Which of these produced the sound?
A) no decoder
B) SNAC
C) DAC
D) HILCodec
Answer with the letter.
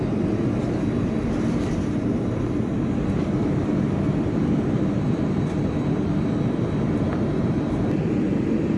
A